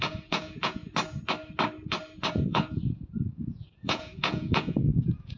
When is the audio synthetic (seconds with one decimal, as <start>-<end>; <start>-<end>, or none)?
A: 0.0-0.8; 2.3-5.4